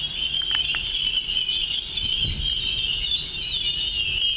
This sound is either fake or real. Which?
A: real